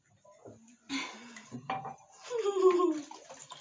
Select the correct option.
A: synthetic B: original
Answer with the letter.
B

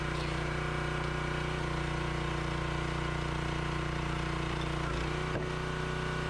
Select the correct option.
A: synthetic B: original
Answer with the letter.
B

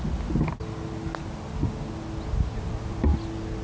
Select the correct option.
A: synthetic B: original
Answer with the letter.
B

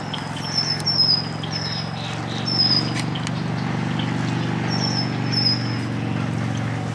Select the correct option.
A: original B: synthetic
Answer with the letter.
A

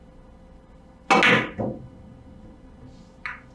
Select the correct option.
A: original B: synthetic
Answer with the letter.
A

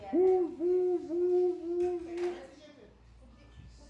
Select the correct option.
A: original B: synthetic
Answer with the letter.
A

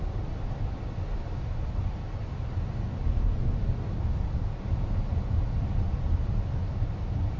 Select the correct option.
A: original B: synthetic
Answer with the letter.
A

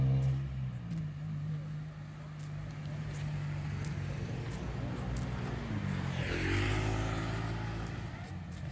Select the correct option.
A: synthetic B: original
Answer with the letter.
B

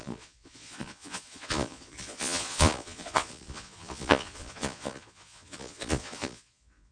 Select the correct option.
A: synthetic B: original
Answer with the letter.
A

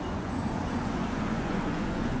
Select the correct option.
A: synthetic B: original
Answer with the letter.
A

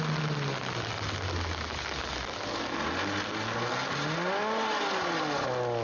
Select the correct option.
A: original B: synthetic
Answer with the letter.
A